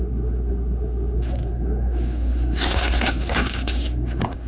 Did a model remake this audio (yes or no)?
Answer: yes